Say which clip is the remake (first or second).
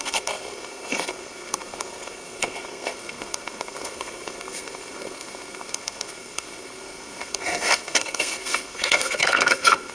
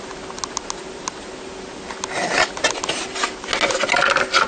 first